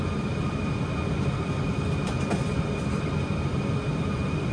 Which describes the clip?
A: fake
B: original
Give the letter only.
B